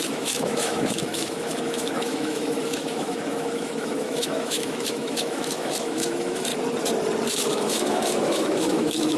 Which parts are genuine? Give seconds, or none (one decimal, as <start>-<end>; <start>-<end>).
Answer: 6.5-7.3